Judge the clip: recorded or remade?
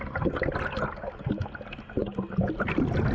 recorded